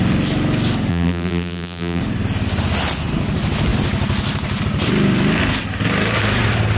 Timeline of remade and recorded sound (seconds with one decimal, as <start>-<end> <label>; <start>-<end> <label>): 0.0-0.9 recorded; 0.9-2.0 remade; 2.0-6.8 recorded